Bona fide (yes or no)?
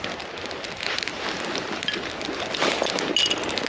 yes